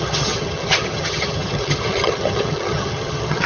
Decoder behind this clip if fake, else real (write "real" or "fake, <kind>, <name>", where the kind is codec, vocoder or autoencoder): fake, vocoder, HiFi-GAN